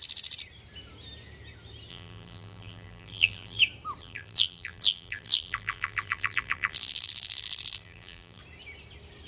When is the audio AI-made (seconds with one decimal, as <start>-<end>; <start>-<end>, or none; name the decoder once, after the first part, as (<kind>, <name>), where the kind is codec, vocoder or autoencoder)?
1.9-3.6 (vocoder, BigVGAN v2); 4.0-8.4